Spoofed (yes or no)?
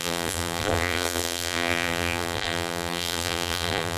yes